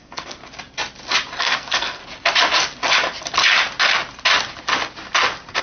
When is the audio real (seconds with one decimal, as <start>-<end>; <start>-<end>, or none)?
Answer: 0.4-1.4; 2.0-5.6